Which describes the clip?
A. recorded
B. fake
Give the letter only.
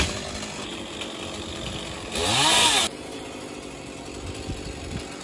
A